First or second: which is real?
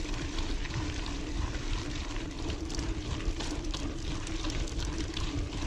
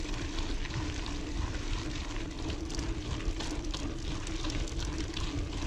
second